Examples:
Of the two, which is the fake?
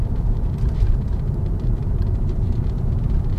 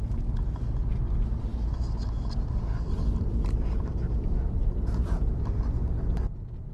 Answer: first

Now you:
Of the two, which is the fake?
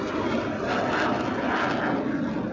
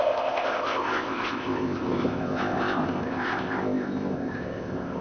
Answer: second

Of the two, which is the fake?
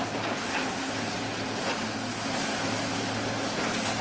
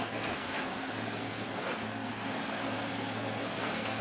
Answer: second